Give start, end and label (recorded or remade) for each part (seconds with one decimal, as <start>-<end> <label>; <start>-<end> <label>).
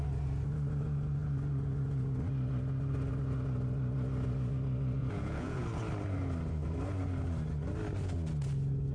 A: 0.0-5.0 recorded; 5.0-5.6 remade; 5.6-8.9 recorded